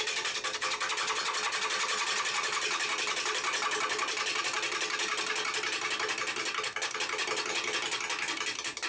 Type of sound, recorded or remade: recorded